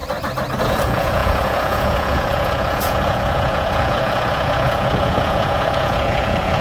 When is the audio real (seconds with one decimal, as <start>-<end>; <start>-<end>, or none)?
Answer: 0.0-0.6